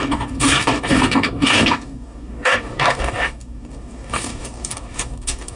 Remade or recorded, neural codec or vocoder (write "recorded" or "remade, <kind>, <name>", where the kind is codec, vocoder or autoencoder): remade, codec, DAC